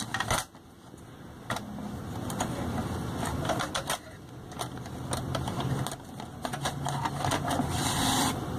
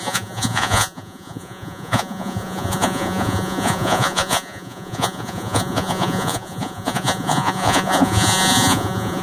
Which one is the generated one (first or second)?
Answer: second